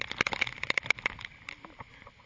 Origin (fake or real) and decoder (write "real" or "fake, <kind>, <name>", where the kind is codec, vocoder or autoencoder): real